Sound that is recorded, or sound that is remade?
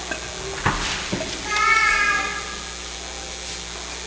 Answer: recorded